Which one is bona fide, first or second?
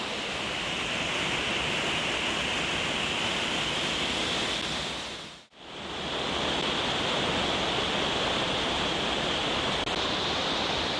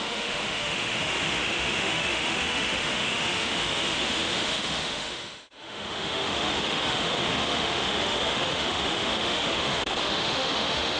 first